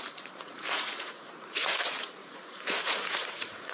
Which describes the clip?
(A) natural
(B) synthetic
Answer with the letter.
B